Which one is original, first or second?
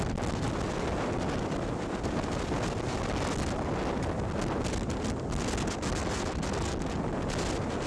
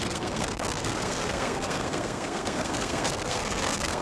first